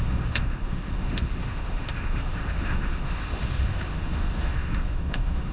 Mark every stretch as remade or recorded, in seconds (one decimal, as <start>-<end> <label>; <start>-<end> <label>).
0.0-5.5 remade